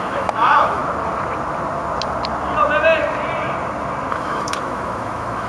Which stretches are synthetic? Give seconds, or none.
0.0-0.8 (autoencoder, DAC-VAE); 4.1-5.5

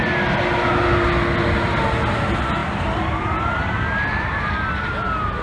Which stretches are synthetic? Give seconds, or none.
none